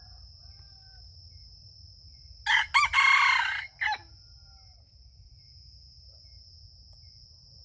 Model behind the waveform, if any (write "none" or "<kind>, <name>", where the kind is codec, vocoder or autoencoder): none